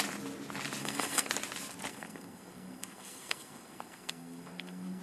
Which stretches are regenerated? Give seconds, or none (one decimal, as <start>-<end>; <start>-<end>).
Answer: 0.8-1.3; 1.9-5.0